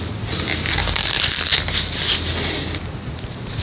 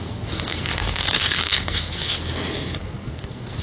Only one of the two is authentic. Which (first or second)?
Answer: first